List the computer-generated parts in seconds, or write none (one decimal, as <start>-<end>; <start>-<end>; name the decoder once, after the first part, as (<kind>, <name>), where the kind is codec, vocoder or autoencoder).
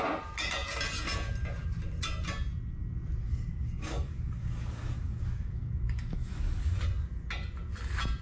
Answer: 3.2-6.7 (codec, DAC)